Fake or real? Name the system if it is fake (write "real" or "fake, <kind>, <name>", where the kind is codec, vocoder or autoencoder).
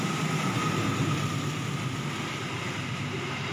real